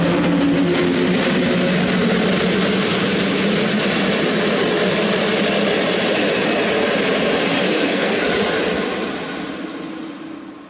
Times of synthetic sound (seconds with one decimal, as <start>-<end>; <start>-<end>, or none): 7.6-8.2